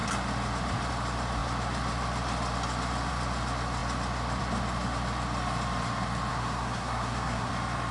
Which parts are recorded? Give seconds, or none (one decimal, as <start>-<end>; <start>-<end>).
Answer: 0.0-6.3; 7.5-7.9